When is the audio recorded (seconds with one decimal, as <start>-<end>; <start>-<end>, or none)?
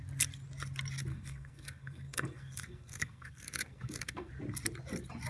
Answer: 0.0-1.1; 4.3-5.3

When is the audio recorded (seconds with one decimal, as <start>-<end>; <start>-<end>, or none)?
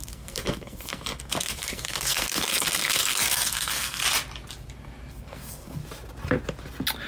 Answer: 4.0-5.1; 5.8-7.1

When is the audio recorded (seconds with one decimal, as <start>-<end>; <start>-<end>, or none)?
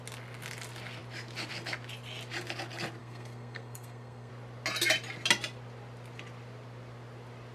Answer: 0.0-3.0; 4.3-7.5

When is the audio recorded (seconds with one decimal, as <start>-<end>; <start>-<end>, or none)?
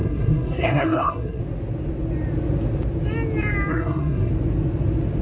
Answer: 1.4-3.7; 4.3-5.2